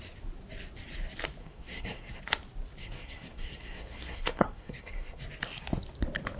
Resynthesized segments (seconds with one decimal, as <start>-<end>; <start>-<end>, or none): 1.4-2.2; 2.8-5.2